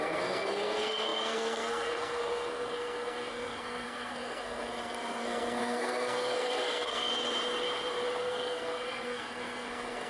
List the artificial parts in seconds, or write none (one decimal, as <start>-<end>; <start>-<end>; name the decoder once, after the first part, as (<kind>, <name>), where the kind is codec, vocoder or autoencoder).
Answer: 0.0-7.1 (codec, SNAC); 8.2-10.1